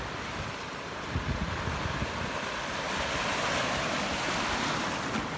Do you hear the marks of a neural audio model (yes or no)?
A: no